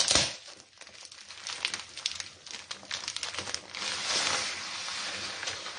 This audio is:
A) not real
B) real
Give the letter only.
B